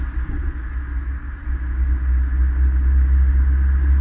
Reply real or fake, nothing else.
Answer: real